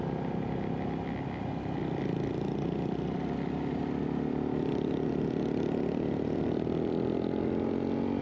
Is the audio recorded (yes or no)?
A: yes